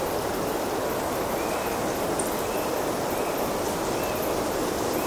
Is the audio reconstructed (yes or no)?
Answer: no